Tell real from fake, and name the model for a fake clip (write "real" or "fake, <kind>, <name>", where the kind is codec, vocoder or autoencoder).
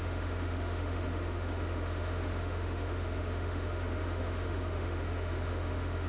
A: fake, autoencoder, DAC-VAE